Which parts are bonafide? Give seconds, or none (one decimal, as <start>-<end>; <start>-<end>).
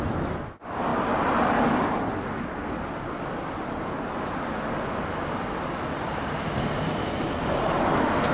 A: 0.0-8.3